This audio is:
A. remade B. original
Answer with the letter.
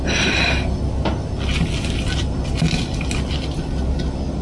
B